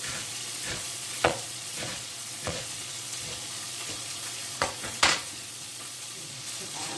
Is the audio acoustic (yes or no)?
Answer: no